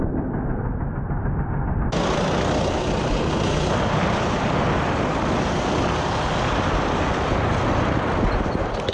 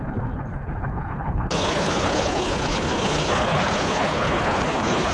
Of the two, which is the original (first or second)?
first